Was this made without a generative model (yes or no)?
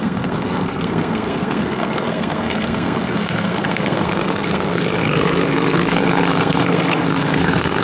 no